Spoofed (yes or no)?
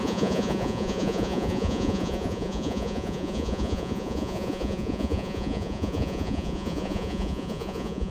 yes